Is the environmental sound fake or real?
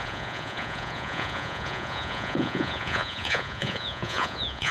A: fake